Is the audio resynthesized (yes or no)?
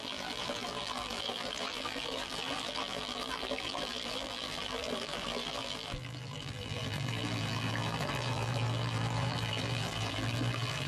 yes